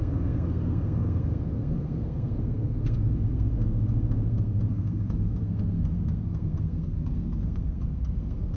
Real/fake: fake